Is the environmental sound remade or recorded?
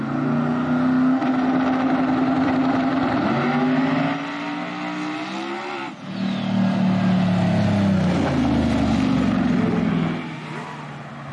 recorded